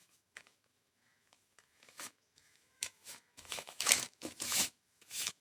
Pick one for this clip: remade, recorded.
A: remade